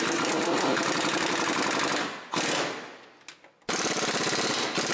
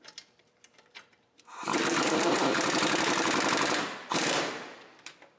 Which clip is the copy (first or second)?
second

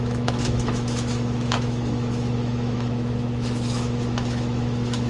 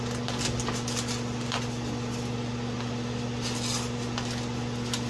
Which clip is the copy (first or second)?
first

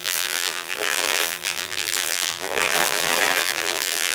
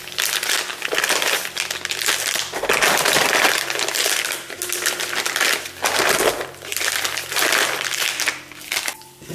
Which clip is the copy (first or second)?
first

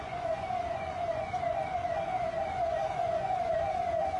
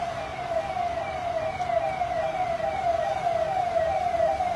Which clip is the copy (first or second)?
first